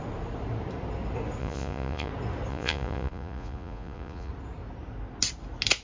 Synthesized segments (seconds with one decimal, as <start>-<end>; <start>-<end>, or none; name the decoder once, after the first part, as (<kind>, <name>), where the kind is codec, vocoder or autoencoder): 1.4-2.1 (vocoder, Vocos); 2.5-4.3